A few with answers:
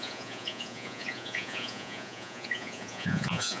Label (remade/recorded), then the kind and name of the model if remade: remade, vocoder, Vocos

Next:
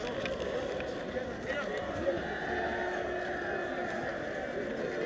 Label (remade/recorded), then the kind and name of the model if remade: recorded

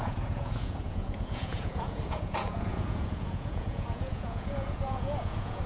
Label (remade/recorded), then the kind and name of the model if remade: remade, vocoder, Vocos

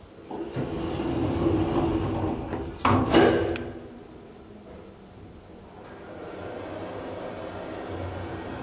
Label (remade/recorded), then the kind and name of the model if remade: recorded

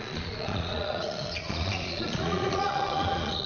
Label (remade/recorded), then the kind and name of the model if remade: remade, vocoder, Vocos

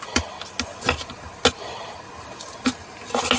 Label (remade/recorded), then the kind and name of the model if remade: recorded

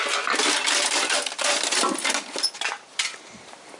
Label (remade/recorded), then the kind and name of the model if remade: remade, vocoder, BigVGAN v2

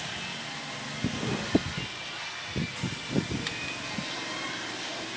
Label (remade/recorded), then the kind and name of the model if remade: recorded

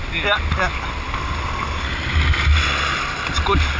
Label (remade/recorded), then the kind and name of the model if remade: recorded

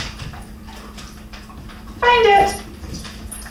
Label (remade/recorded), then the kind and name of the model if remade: remade, vocoder, BigVGAN v2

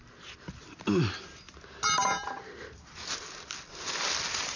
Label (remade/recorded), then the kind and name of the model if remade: recorded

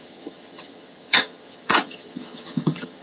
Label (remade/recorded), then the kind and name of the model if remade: remade, vocoder, HiFi-GAN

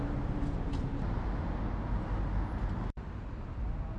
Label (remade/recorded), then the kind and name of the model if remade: recorded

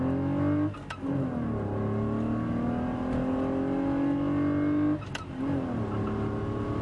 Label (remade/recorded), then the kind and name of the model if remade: recorded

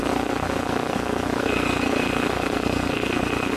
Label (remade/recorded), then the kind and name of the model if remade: remade, codec, SNAC